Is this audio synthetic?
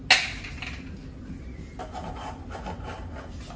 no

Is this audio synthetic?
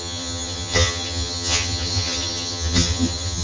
yes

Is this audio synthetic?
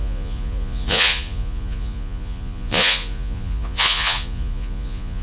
yes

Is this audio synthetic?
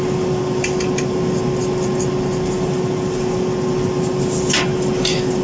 no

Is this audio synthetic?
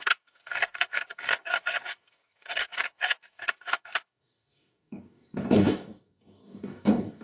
yes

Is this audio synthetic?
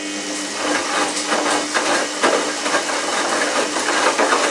no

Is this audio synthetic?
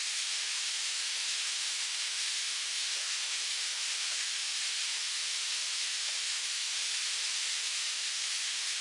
yes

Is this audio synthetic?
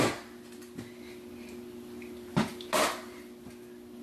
no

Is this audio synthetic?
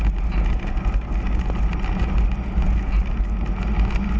no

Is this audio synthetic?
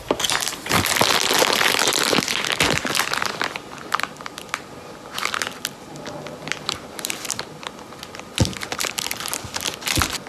no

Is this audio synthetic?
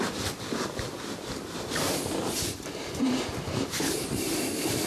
yes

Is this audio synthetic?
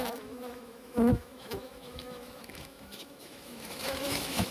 yes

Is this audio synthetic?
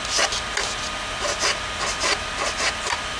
no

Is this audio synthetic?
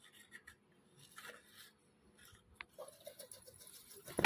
no